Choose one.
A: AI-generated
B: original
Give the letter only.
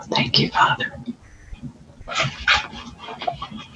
B